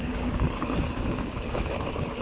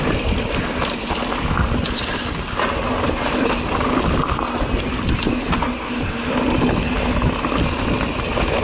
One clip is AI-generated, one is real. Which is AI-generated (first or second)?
first